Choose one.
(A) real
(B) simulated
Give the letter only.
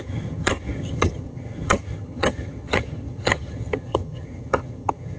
B